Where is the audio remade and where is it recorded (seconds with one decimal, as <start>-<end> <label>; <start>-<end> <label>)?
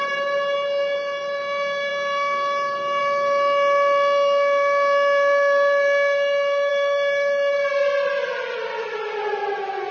0.0-9.9 recorded